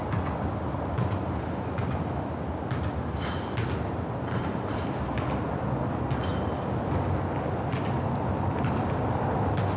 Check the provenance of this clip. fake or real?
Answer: real